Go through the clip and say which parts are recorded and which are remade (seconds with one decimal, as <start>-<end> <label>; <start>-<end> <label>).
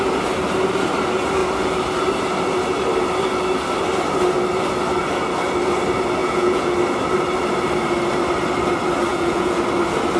0.0-6.2 recorded; 6.2-6.7 remade; 6.7-9.1 recorded; 9.1-9.6 remade; 9.6-10.2 recorded